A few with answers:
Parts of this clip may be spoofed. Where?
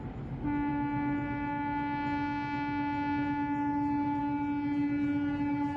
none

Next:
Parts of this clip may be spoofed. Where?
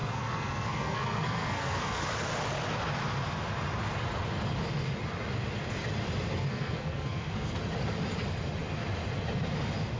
0.0-2.1 (codec, SNAC); 6.5-7.6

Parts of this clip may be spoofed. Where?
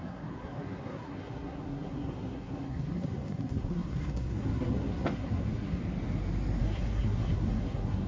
0.0-5.8 (codec, SNAC); 6.6-8.1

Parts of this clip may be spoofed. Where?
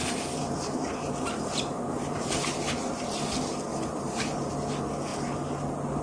0.0-2.3 (vocoder, BigVGAN v2); 3.7-4.5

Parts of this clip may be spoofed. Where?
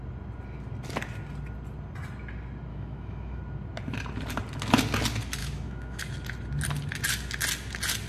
2.7-3.4 (autoencoder, DAC-VAE); 5.4-6.0